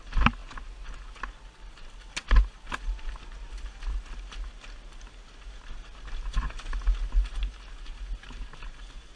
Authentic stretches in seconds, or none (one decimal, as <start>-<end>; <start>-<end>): 0.0-9.2